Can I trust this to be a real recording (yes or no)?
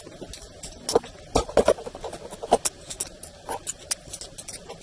yes